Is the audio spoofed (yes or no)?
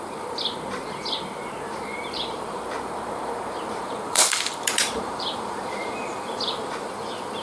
yes